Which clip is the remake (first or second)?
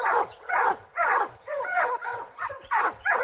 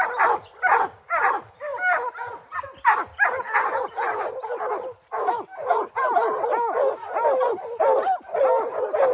first